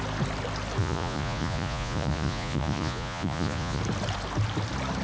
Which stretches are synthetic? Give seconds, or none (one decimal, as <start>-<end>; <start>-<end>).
0.8-3.8